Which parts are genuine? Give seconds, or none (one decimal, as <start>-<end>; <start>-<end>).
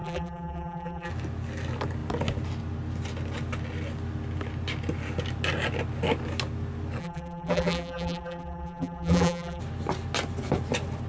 1.1-7.0; 9.6-11.1